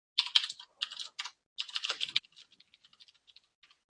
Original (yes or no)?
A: yes